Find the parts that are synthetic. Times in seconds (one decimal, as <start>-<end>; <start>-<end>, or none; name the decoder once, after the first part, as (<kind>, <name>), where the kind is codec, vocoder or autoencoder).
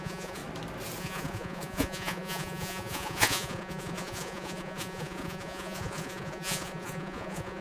0.0-0.4 (vocoder, Vocos); 1.0-7.6